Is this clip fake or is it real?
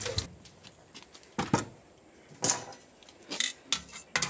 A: real